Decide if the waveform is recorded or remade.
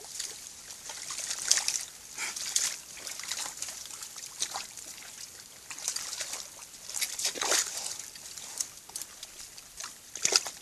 recorded